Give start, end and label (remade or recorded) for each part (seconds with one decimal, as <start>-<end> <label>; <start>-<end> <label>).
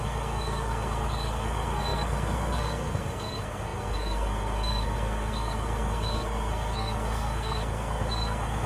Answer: 0.0-8.7 remade